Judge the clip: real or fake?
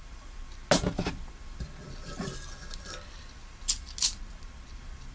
real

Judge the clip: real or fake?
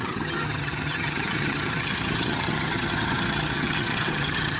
fake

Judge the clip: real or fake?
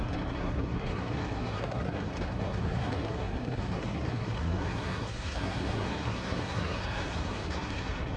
fake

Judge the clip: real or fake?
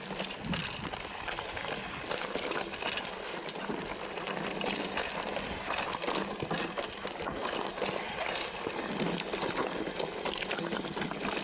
real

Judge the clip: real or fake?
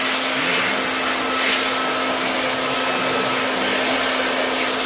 real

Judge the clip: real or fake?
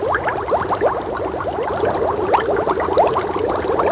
real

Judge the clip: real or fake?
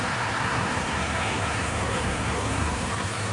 fake